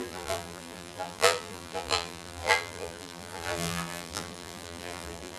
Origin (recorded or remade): remade